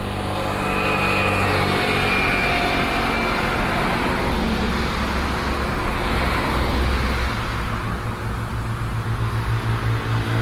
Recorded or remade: recorded